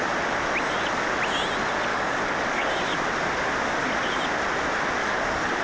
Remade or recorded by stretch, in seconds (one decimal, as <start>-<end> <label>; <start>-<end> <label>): 0.0-1.9 recorded; 1.9-2.7 remade; 2.7-5.0 recorded; 5.0-5.6 remade